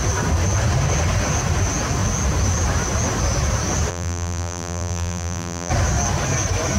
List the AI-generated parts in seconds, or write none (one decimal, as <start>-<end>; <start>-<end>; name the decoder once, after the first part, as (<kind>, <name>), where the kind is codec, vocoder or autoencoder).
3.9-5.7 (vocoder, BigVGAN v2)